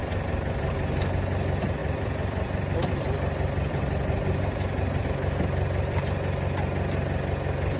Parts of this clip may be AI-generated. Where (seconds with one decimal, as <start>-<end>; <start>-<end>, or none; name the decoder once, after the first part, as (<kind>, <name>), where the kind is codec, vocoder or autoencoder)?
1.8-6.0 (vocoder, BigVGAN v2)